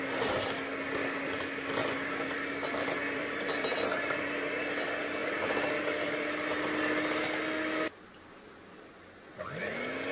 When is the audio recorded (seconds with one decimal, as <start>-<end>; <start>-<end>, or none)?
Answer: 0.0-1.0; 4.8-5.2; 6.8-10.1